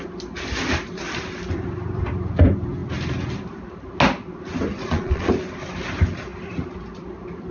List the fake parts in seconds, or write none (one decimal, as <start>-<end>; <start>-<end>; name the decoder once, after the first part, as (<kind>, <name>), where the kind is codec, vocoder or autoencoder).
4.8-5.3 (vocoder, Vocos)